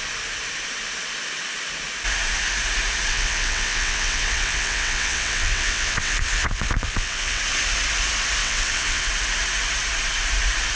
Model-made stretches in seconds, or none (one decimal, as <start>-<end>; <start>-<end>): 3.1-7.4; 8.4-9.1